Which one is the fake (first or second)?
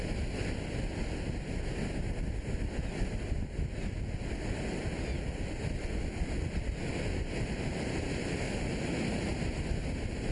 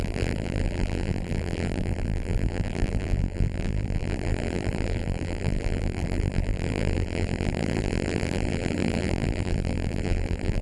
second